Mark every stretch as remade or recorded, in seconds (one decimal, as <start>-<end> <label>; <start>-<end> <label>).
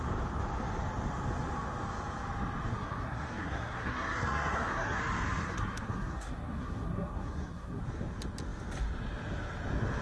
0.0-2.7 recorded; 2.7-5.0 remade; 5.0-5.4 recorded; 5.4-7.8 remade; 7.8-10.0 recorded